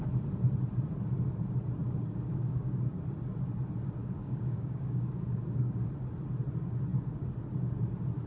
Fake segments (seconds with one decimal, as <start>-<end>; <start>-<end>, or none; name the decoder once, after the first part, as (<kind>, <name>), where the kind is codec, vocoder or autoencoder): 1.8-3.0 (codec, DAC); 4.0-5.9